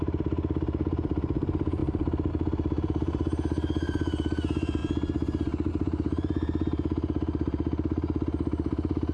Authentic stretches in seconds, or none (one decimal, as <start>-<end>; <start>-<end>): 4.8-5.7